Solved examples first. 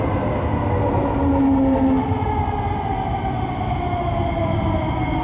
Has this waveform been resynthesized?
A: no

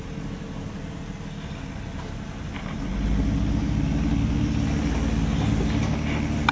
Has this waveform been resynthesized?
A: no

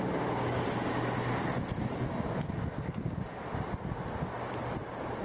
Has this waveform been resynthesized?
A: no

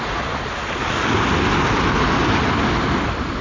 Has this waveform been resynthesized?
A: no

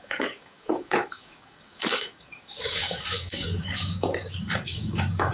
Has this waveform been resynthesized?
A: yes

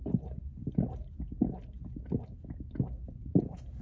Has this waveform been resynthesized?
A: no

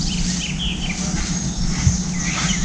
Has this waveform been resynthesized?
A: no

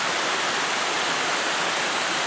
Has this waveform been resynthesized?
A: no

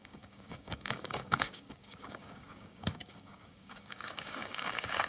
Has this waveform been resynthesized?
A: yes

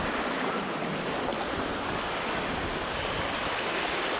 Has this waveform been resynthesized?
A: no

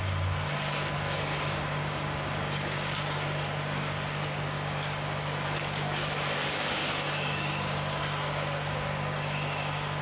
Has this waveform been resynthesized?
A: yes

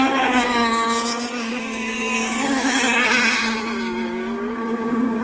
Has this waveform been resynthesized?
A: yes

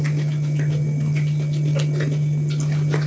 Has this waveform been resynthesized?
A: no